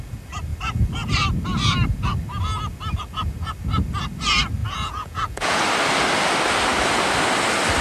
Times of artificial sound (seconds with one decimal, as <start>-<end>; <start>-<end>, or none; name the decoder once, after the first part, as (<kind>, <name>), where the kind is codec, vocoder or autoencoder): 4.6-5.6 (vocoder, Vocos)